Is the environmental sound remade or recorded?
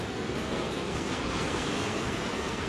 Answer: remade